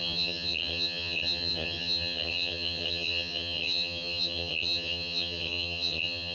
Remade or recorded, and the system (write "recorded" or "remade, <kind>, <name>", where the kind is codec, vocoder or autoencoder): remade, vocoder, HiFi-GAN